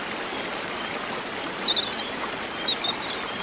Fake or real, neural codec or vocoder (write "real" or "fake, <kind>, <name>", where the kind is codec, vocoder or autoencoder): real